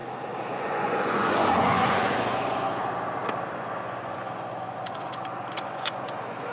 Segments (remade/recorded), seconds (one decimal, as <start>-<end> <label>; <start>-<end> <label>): 0.0-0.5 recorded; 0.5-2.8 remade; 2.8-3.5 recorded; 3.5-6.5 remade